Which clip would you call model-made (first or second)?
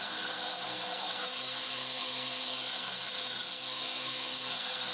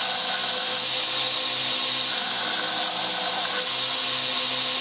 first